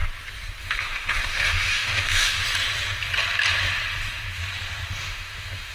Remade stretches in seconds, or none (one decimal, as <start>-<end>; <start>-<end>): 0.6-2.4; 5.0-5.7